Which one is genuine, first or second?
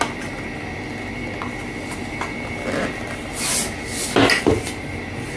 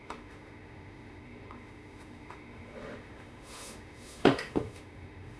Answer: first